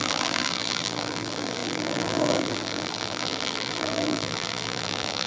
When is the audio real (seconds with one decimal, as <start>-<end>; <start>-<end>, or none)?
none